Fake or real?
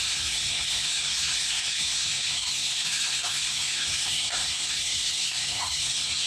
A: fake